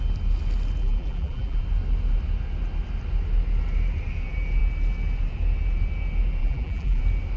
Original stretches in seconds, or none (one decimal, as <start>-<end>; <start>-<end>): 0.0-0.8; 1.6-6.4; 7.0-7.4